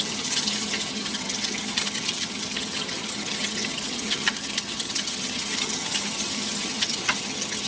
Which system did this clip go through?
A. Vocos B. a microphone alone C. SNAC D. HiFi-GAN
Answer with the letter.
D